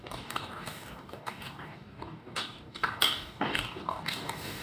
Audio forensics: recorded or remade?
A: remade